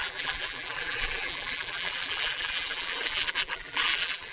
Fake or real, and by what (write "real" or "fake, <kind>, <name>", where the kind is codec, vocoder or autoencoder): fake, vocoder, BigVGAN v2